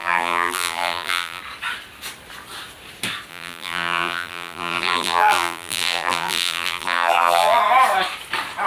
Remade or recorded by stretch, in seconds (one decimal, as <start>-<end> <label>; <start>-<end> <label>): 0.0-1.4 remade; 1.4-3.3 recorded; 3.3-7.6 remade; 7.6-8.7 recorded

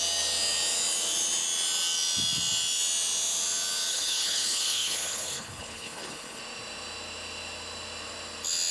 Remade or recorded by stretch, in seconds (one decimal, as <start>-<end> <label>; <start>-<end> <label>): 0.0-3.9 recorded; 3.9-6.4 remade; 6.4-8.7 recorded